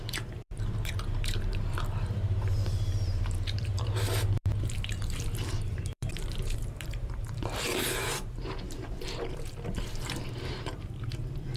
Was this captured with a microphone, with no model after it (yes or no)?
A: no